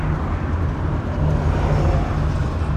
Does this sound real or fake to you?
real